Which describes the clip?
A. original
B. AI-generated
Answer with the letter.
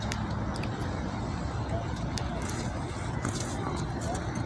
A